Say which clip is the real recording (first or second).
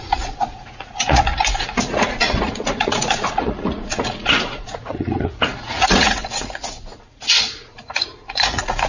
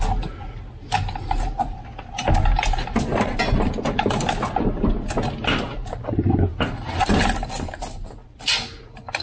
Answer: second